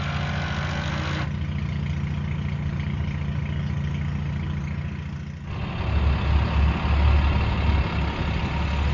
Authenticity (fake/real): real